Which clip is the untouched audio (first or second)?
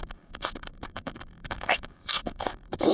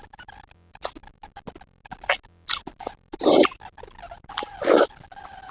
second